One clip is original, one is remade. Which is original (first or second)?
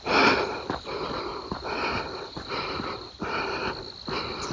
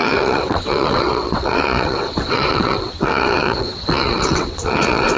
first